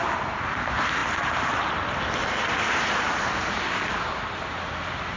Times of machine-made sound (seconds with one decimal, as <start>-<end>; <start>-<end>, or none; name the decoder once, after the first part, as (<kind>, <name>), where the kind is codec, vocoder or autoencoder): none